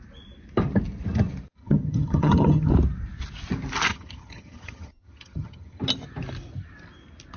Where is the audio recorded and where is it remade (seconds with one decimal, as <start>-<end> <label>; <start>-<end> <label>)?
0.0-1.6 recorded; 1.6-2.7 remade; 2.7-3.9 recorded; 3.9-5.8 remade; 5.8-7.4 recorded